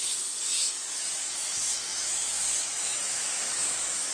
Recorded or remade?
remade